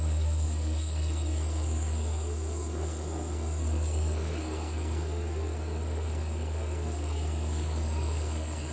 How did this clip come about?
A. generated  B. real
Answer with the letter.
A